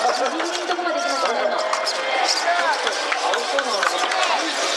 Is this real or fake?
real